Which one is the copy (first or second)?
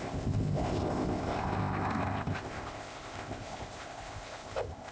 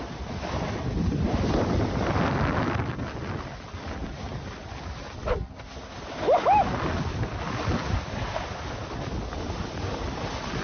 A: first